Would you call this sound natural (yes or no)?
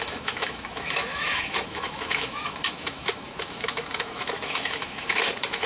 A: no